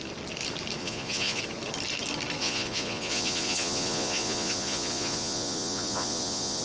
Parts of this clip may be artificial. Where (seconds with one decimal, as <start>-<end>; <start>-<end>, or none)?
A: 0.8-1.4; 2.4-6.6